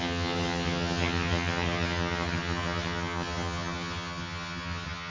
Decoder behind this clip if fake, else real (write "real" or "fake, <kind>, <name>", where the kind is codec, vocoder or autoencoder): fake, vocoder, HiFi-GAN